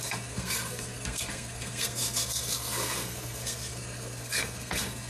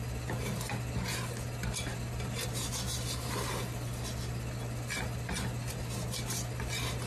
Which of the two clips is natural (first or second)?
second